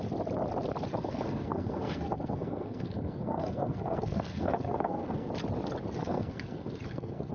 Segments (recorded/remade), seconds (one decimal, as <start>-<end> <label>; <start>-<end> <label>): 0.0-0.9 recorded; 0.9-5.3 remade; 5.3-6.0 recorded; 6.0-7.3 remade